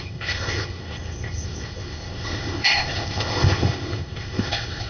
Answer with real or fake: fake